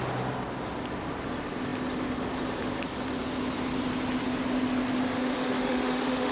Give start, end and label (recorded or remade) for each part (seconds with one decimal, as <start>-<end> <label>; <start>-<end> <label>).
0.0-5.2 recorded; 5.2-6.3 remade